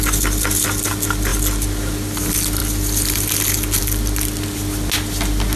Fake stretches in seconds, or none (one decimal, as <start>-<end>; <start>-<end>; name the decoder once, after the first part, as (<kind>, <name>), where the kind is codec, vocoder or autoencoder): none